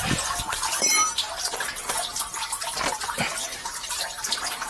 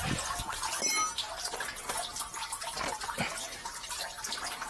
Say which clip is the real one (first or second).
second